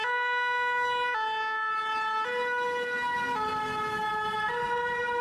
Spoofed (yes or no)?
no